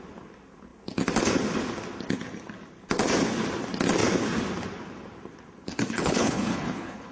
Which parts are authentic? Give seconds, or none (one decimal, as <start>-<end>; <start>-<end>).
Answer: 0.0-5.7